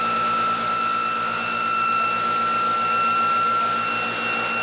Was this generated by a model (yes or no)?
no